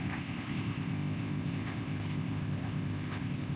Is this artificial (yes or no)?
yes